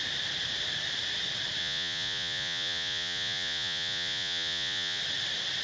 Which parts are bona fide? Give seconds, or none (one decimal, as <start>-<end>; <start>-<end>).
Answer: 0.0-1.6; 5.0-5.6